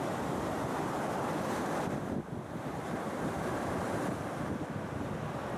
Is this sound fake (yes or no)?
yes